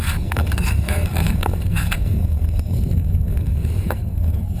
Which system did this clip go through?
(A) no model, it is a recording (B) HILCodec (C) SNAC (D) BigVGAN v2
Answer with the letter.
C